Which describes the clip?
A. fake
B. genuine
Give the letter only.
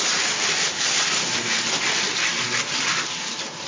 B